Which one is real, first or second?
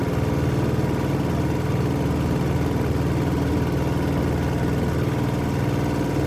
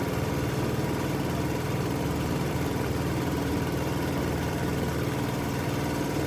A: first